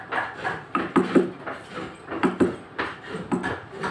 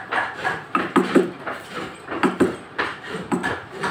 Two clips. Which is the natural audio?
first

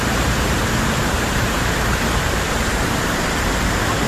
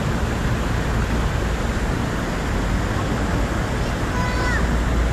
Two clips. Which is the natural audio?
second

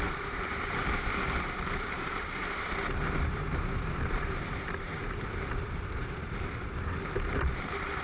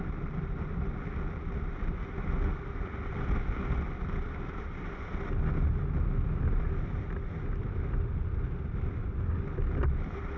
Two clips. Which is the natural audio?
second